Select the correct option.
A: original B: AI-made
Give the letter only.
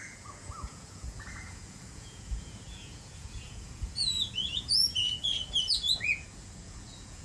B